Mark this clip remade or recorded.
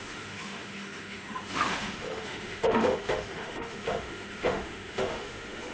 remade